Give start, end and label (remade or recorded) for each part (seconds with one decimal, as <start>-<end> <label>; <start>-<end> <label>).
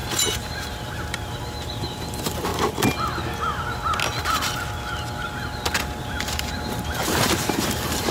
0.0-2.5 remade; 2.5-6.0 recorded; 6.0-8.1 remade